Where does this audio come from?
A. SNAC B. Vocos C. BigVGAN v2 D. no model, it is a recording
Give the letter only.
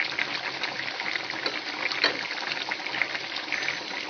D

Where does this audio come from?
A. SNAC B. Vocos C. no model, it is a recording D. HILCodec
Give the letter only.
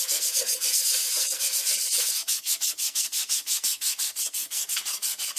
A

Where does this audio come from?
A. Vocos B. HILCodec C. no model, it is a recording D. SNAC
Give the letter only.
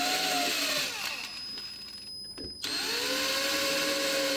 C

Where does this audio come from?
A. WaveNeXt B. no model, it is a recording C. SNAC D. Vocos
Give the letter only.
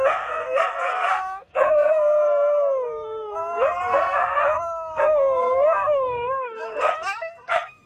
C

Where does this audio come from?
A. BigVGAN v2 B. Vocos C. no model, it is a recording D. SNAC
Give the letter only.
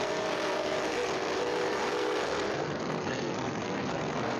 D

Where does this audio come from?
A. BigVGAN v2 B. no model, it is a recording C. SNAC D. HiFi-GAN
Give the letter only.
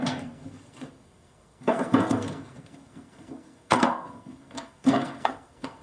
C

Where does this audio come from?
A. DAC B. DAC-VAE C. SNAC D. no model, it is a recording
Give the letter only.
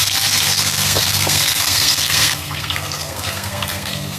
C